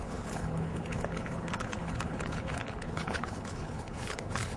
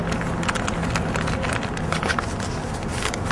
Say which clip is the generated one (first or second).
first